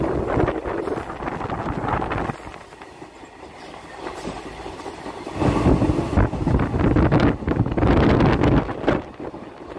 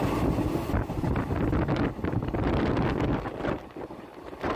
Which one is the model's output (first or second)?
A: second